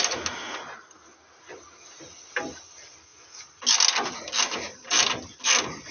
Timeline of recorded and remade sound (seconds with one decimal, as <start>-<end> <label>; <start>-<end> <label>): 0.0-5.9 recorded